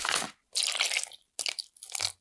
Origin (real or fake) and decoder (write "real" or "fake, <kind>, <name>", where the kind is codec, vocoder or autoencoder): real